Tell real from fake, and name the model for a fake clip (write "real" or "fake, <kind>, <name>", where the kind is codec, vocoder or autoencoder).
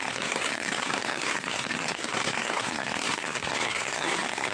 fake, codec, SNAC